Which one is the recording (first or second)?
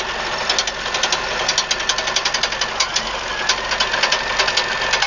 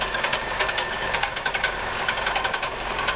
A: first